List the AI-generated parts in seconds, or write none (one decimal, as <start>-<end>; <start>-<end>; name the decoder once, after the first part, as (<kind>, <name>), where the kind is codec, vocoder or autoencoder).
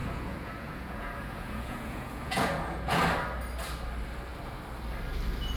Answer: 0.0-3.0 (vocoder, Vocos)